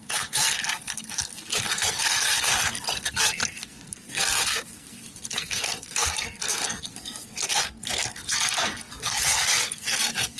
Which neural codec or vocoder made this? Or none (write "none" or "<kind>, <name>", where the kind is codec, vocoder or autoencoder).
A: codec, SNAC